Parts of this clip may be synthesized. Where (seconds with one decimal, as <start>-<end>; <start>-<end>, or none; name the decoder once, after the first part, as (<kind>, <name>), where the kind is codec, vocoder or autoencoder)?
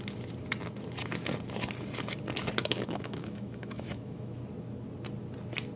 2.6-4.3 (autoencoder, DAC-VAE)